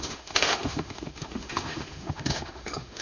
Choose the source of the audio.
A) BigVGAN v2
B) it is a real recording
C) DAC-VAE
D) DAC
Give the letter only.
C